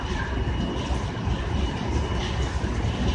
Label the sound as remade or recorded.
recorded